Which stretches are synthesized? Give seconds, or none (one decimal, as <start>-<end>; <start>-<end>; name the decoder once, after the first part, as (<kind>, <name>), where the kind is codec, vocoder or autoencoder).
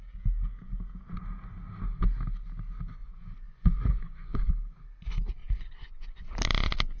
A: 3.0-4.5 (vocoder, Vocos); 5.4-6.3